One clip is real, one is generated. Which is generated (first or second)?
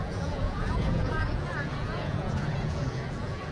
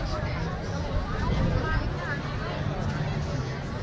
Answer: first